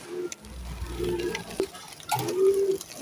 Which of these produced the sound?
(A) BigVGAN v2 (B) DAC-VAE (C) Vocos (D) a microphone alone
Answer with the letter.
A